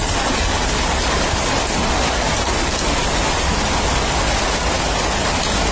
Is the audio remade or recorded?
recorded